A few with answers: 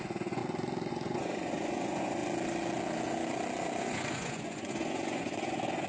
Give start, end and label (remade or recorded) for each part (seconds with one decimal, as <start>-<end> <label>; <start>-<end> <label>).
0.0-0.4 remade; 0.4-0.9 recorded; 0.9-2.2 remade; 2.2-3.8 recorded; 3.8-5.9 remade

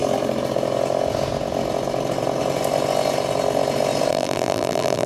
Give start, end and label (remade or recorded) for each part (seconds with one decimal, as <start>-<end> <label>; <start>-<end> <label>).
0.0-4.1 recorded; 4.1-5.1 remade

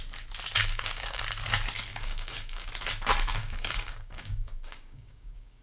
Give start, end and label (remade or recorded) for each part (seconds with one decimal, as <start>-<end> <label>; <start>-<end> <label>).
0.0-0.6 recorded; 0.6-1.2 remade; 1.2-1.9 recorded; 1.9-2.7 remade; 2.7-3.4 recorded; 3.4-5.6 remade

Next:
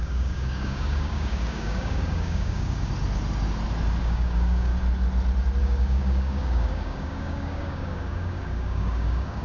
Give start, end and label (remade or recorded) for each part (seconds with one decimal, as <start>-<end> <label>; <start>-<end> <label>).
0.0-2.9 remade; 2.9-4.0 recorded; 4.0-4.7 remade; 4.7-5.6 recorded; 5.6-9.4 remade

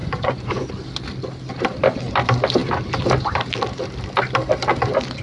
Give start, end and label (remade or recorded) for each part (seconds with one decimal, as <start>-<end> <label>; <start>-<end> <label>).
0.0-0.7 remade; 0.7-5.2 recorded